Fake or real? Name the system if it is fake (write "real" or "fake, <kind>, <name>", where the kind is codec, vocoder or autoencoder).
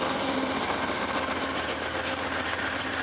fake, vocoder, BigVGAN v2